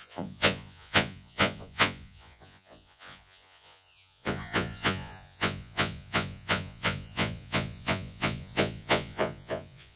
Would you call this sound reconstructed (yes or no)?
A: yes